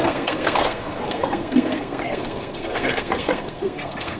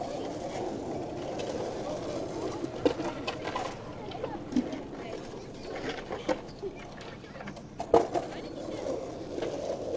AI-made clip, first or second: first